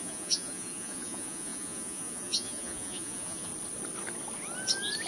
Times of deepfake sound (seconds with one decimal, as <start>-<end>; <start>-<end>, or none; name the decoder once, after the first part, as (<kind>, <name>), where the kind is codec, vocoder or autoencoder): 0.0-3.5 (vocoder, Vocos)